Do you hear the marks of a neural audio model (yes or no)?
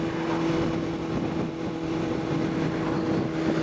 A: no